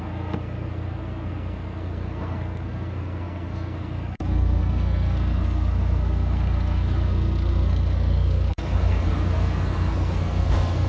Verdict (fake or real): fake